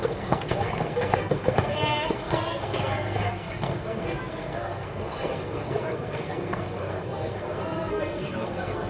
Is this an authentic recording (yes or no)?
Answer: no